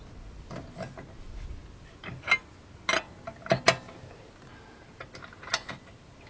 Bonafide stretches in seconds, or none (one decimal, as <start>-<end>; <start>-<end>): 0.0-6.3